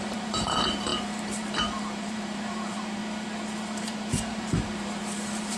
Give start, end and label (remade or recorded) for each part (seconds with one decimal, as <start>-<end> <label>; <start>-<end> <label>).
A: 0.0-3.0 remade; 3.0-3.8 recorded; 3.8-5.6 remade